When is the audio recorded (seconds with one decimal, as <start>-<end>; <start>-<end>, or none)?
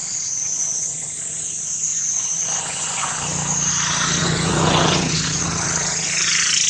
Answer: 1.1-1.9; 3.2-4.2; 5.4-6.7